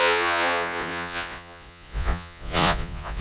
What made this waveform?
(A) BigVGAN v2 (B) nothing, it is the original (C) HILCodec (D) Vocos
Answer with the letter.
D